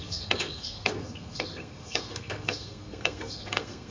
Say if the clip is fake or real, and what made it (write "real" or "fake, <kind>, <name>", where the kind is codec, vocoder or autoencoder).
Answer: fake, codec, SNAC